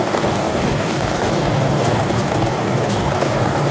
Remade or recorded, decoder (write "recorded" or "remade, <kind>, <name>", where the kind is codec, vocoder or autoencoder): remade, codec, DAC